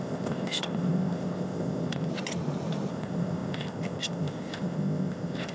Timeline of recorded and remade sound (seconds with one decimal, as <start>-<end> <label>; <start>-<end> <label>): 0.0-2.1 remade; 2.1-2.9 recorded; 2.9-5.5 remade